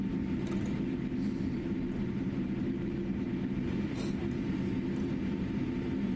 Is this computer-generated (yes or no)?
no